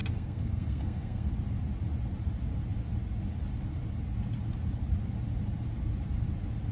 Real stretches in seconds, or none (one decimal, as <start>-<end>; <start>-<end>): 1.3-6.7